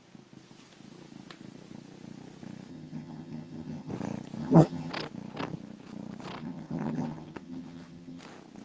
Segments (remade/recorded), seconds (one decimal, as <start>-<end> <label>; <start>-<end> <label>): 0.0-2.7 recorded; 2.7-3.9 remade; 3.9-4.4 recorded; 4.4-4.9 remade; 4.9-6.4 recorded; 6.4-8.2 remade; 8.2-8.6 recorded